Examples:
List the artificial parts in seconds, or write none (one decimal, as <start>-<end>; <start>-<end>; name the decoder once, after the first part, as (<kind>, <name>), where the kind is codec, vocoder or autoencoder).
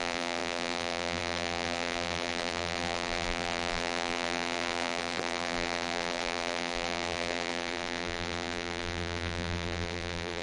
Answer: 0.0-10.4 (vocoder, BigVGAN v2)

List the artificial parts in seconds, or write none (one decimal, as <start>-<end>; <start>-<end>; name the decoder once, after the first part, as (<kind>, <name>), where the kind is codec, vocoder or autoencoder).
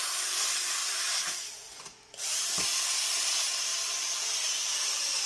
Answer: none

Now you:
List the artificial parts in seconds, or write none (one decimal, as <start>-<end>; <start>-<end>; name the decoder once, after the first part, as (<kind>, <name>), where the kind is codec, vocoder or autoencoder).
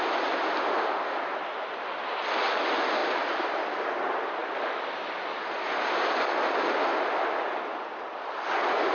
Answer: 3.0-4.0 (vocoder, BigVGAN v2); 4.4-5.1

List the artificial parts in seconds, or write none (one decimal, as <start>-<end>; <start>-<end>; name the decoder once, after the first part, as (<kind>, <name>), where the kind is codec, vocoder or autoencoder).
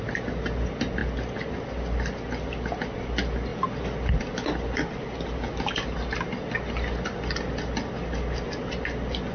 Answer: none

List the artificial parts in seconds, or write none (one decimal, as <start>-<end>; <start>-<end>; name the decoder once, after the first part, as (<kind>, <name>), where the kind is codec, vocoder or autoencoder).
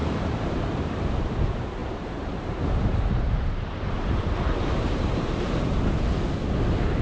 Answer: 0.0-1.0 (vocoder, BigVGAN v2); 1.8-5.8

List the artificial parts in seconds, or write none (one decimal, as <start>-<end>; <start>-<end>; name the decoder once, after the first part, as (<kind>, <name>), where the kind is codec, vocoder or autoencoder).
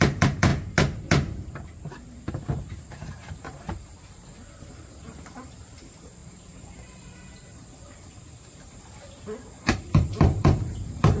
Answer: 0.0-0.5 (vocoder, BigVGAN v2); 2.5-11.2